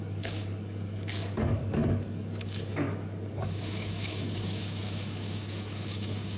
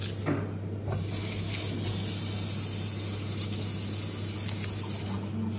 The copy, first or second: first